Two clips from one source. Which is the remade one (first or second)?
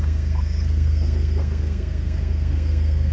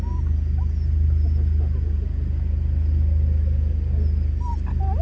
first